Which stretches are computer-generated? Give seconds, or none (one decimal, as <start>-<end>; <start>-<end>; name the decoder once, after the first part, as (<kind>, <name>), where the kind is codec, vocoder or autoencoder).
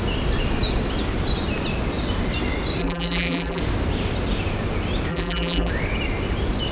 2.8-3.6 (vocoder, BigVGAN v2); 5.1-5.7